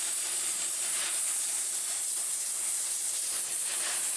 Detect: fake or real fake